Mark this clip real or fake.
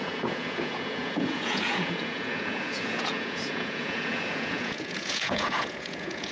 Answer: fake